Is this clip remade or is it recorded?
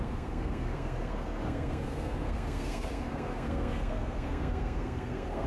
remade